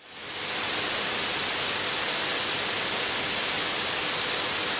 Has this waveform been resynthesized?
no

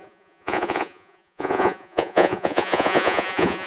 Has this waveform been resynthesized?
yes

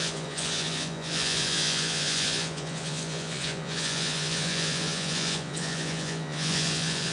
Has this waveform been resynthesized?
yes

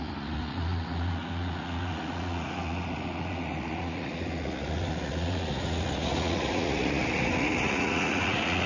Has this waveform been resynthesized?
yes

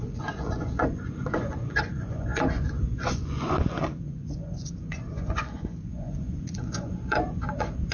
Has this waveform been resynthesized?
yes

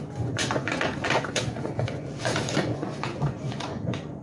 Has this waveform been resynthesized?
yes